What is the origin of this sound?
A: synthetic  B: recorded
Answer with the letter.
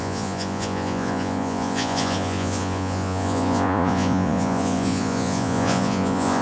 A